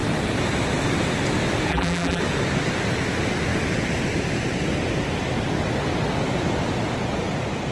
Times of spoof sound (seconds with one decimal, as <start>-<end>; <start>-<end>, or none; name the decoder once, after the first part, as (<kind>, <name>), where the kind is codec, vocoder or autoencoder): 1.7-2.2 (vocoder, BigVGAN v2)